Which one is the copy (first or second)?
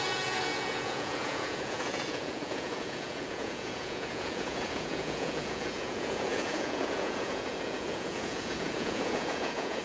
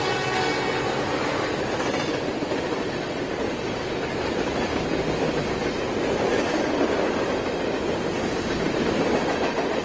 first